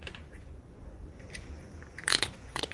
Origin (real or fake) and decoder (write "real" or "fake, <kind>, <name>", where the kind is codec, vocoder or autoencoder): fake, vocoder, Vocos